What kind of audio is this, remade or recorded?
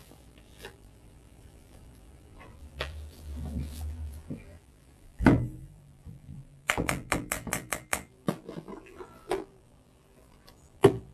remade